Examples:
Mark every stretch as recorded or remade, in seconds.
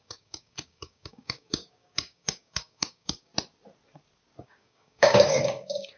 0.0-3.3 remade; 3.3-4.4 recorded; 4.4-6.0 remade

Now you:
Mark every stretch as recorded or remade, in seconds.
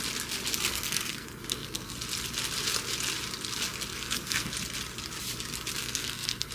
0.0-0.7 recorded; 0.7-1.9 remade; 1.9-3.9 recorded; 3.9-4.5 remade; 4.5-5.8 recorded; 5.8-6.5 remade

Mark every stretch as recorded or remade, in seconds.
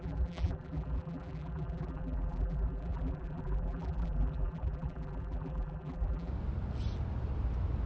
0.0-6.3 remade; 6.3-7.9 recorded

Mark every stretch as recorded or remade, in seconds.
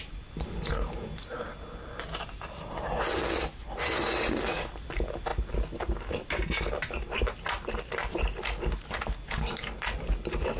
0.0-10.6 recorded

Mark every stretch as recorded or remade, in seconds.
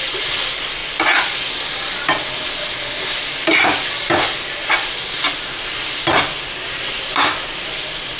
0.0-0.8 remade; 0.8-4.9 recorded; 4.9-8.2 remade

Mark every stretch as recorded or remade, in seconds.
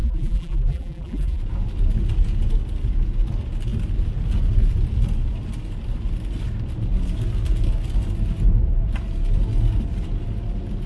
0.0-1.4 remade; 1.4-10.9 recorded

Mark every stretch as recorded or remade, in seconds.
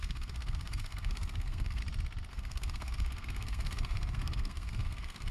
0.0-1.8 remade; 1.8-2.3 recorded; 2.3-5.3 remade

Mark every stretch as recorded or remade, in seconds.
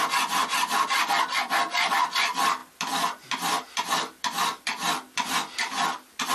0.0-2.6 recorded; 2.6-6.3 remade